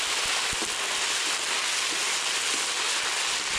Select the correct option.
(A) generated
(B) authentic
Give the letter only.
B